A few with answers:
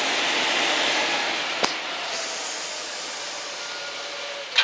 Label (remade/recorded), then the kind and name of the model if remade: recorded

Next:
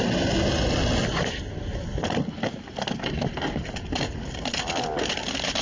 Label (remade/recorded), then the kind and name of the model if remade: recorded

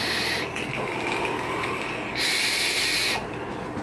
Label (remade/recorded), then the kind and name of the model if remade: recorded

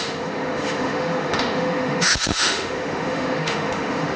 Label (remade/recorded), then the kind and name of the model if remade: remade, autoencoder, DAC-VAE